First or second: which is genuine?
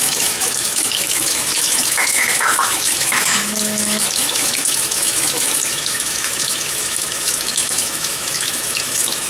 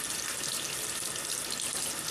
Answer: second